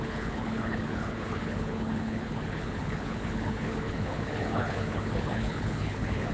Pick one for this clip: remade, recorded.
remade